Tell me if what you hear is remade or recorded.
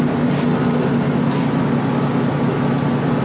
recorded